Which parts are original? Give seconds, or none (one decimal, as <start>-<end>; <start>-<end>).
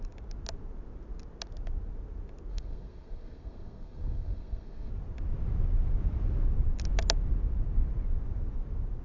0.0-2.5; 4.9-9.0